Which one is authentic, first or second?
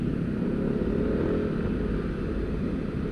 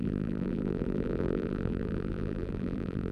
first